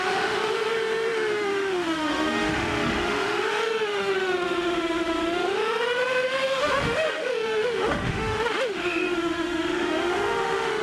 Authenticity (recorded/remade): remade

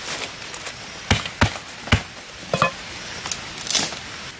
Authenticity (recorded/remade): recorded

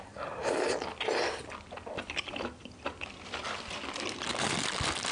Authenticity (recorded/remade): recorded